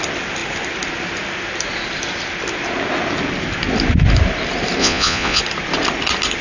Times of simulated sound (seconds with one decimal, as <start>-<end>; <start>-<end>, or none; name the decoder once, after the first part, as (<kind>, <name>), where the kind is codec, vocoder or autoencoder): 4.8-5.4 (vocoder, Vocos)